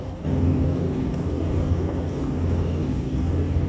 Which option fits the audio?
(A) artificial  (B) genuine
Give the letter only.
A